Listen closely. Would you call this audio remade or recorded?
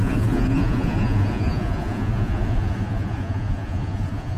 remade